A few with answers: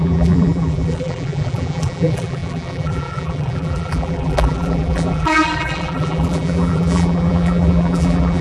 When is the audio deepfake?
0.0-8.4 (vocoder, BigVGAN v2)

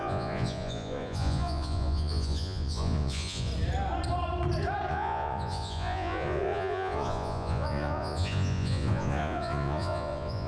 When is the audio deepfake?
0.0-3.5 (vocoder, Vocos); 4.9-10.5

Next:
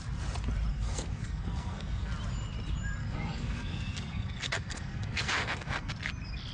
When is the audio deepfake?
0.7-2.1 (codec, SNAC); 3.0-5.9